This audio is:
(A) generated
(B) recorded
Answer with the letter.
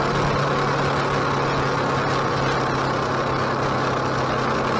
B